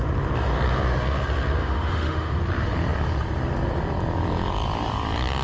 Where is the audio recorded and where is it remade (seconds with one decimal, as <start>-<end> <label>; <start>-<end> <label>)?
0.0-1.6 recorded; 1.6-2.4 remade; 2.4-5.4 recorded